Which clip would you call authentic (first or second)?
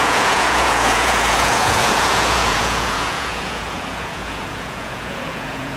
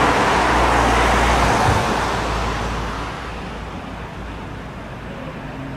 second